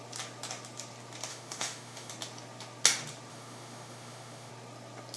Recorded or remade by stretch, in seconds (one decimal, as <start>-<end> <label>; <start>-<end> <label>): 0.0-1.3 recorded; 1.3-2.1 remade; 2.1-3.3 recorded; 3.3-4.5 remade; 4.5-5.2 recorded